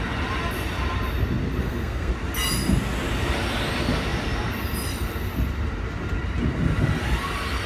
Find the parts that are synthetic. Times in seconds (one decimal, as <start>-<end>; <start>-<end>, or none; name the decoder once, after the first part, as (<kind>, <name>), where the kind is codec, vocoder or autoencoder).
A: 1.6-2.1 (codec, SNAC)